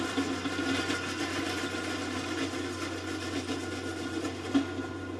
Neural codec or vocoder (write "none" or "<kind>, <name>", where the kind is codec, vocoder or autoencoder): none